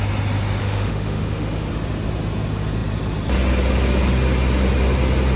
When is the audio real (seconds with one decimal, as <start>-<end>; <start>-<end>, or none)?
0.0-0.6; 1.7-5.4